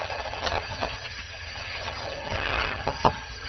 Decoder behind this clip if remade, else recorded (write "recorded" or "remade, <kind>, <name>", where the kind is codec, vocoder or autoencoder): remade, vocoder, HiFi-GAN